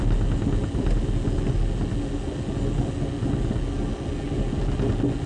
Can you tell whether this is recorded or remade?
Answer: recorded